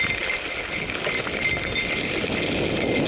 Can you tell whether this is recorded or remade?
recorded